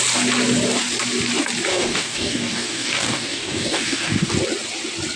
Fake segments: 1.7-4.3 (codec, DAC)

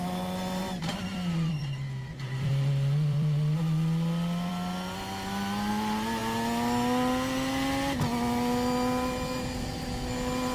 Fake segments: 0.6-3.6 (vocoder, BigVGAN v2)

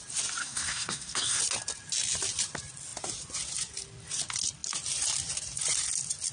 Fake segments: 0.4-1.4 (codec, SNAC)

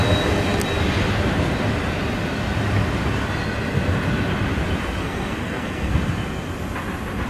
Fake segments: 5.0-5.9 (codec, SNAC)